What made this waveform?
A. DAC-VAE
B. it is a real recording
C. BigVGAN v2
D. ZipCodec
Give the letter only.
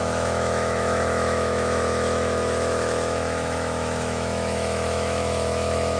A